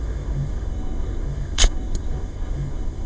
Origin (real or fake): fake